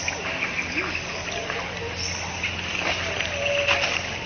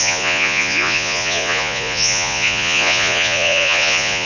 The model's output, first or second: second